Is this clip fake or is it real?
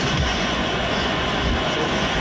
fake